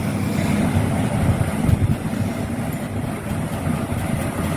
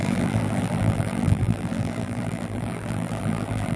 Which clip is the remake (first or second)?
second